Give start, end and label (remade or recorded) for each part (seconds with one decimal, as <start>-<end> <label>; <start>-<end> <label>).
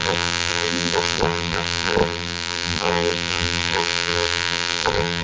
0.0-5.2 remade